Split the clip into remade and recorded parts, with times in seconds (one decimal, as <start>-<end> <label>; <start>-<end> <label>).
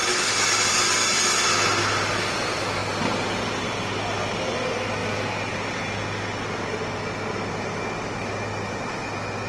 0.0-9.5 recorded